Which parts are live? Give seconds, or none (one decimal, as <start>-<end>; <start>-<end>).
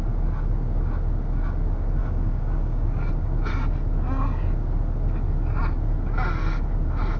0.0-2.0; 3.1-7.2